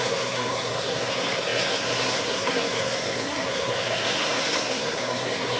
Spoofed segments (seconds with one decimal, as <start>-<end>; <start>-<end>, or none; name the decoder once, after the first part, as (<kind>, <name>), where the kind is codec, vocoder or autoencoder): 0.0-5.6 (codec, SNAC)